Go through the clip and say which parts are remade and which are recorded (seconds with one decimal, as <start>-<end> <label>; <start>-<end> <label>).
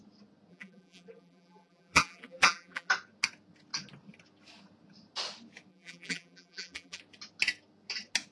0.0-0.5 recorded; 0.5-2.9 remade; 2.9-5.7 recorded; 5.7-7.0 remade; 7.0-8.3 recorded